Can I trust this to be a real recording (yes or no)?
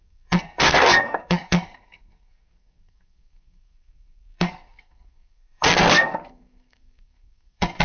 no